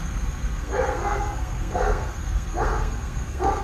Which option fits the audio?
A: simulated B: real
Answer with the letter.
A